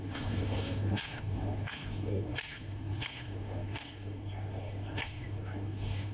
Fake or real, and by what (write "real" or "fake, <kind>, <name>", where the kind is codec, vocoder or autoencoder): fake, codec, SNAC